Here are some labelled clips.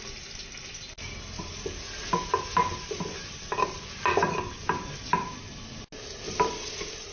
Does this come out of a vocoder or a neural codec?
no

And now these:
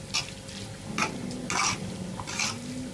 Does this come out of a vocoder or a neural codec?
no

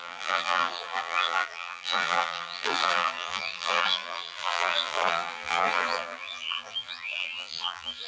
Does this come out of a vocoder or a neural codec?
yes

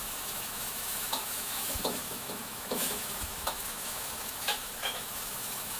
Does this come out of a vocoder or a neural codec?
yes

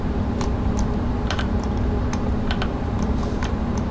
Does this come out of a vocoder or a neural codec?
yes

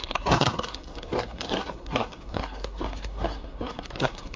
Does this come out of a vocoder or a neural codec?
yes